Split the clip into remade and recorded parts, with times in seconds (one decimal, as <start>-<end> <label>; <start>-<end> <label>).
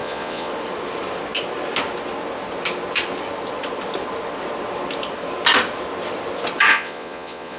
0.0-0.5 remade; 0.5-6.7 recorded; 6.7-7.6 remade